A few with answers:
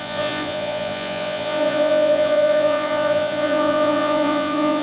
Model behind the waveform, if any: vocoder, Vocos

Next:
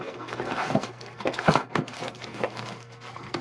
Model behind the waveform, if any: codec, SNAC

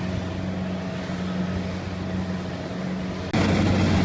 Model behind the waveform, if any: none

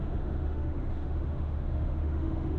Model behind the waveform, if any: autoencoder, DAC-VAE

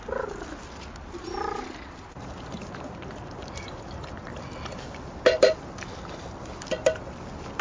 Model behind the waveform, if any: none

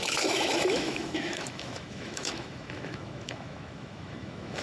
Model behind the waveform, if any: autoencoder, DAC-VAE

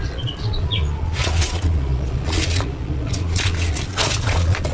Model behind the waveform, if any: vocoder, Vocos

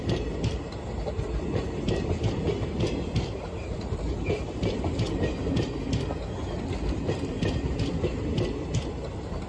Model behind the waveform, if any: none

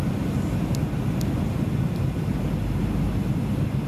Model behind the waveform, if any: none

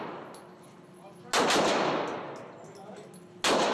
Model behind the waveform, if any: none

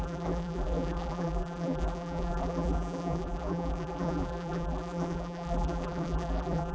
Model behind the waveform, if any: vocoder, BigVGAN v2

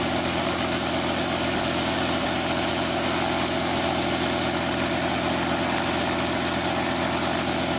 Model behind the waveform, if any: none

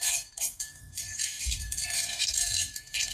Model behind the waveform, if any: codec, SNAC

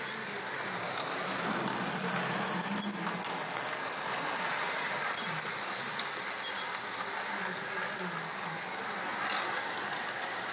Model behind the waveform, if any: none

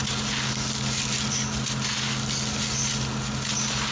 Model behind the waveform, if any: none